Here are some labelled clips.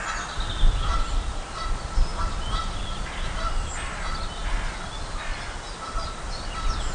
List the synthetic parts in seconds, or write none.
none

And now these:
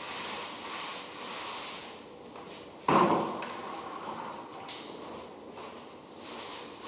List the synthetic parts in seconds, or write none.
none

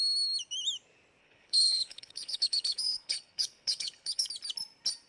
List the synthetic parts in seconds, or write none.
1.2-4.3